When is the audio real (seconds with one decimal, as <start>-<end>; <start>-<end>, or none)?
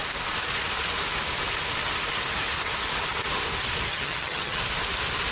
0.0-3.9; 4.6-5.3